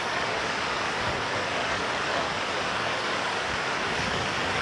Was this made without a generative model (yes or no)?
no